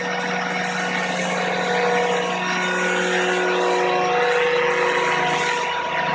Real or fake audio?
real